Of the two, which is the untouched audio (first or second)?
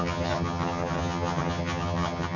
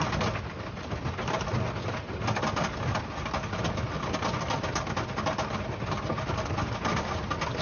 second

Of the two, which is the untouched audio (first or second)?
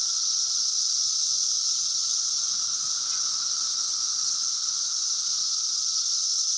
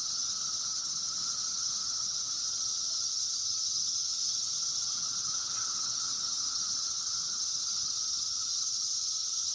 first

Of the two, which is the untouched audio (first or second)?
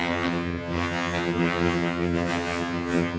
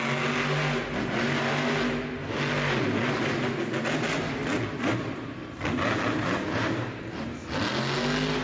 second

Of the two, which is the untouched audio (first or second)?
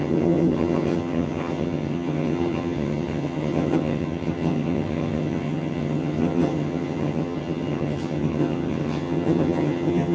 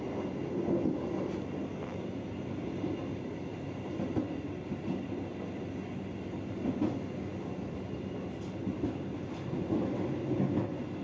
second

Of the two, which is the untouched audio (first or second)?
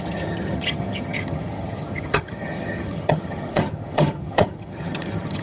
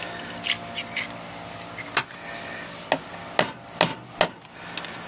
second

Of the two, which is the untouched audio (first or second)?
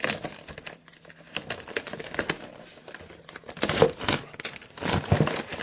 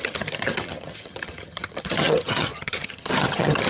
first